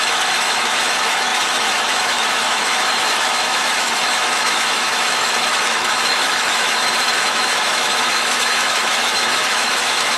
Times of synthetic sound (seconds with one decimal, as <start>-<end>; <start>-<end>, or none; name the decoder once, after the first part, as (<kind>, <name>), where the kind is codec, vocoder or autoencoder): 0.0-10.2 (autoencoder, DAC-VAE)